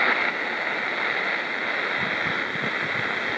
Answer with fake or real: real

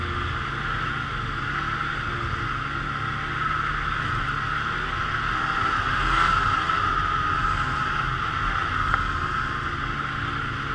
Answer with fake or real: real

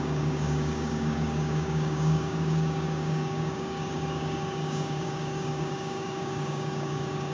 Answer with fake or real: fake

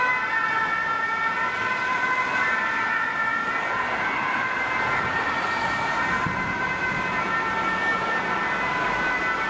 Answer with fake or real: real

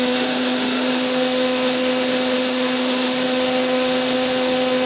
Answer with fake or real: fake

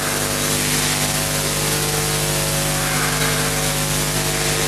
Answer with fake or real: real